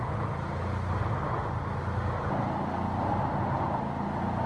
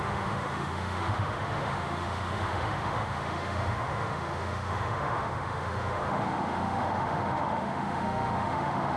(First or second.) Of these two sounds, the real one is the first